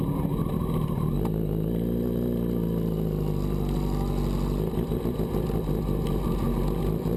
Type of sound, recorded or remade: recorded